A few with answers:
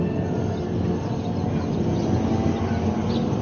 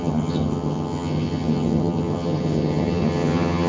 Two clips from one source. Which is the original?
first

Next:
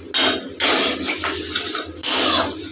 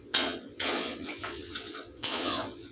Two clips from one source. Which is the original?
first